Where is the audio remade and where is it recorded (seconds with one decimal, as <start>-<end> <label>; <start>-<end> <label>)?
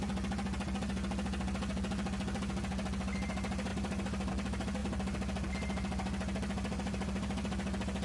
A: 0.0-8.0 recorded